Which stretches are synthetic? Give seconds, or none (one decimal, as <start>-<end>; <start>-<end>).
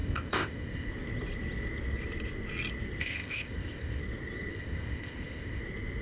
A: 0.0-0.9; 3.0-4.0; 4.5-5.6